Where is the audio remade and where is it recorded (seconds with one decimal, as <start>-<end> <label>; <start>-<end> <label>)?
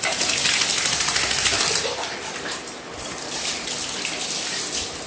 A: 0.0-0.7 recorded; 0.7-3.7 remade; 3.7-5.1 recorded